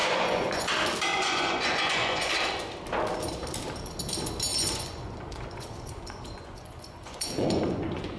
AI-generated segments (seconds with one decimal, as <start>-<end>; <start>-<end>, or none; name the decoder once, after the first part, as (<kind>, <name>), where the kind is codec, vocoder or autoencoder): 0.0-0.7 (vocoder, Vocos); 1.1-2.3; 4.5-8.2